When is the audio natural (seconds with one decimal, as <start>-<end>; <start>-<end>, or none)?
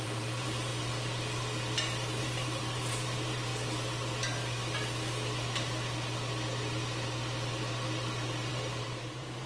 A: 0.7-2.2; 3.5-8.5